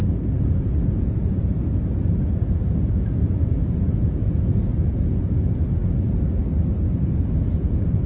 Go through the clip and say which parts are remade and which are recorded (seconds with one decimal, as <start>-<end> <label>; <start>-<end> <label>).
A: 0.0-5.8 remade; 5.8-7.1 recorded; 7.1-8.1 remade